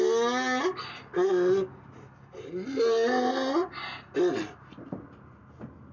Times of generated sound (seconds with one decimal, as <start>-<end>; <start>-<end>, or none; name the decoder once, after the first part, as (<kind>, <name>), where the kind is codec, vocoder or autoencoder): none